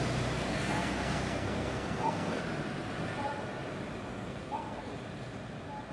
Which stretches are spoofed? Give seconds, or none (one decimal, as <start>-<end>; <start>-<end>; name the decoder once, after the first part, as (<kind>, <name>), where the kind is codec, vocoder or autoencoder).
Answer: 0.5-2.4 (codec, SNAC); 4.1-4.9